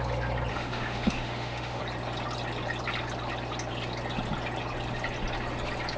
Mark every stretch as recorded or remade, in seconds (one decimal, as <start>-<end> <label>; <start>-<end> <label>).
0.0-0.5 recorded; 0.5-1.8 remade; 1.8-6.0 recorded